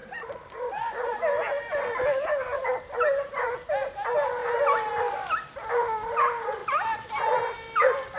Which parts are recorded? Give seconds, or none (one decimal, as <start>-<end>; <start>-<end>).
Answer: 0.0-8.2